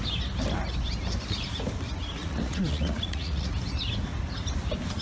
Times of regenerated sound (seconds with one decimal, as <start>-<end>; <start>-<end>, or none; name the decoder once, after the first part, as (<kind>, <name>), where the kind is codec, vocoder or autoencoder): 2.2-3.5 (vocoder, Vocos)